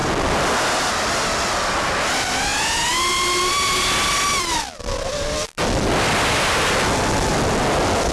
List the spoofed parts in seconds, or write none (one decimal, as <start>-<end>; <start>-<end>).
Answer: none